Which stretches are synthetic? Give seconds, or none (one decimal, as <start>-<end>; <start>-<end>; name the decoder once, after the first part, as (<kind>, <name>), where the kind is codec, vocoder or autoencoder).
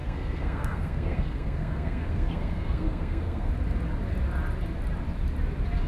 0.0-3.5 (codec, SNAC)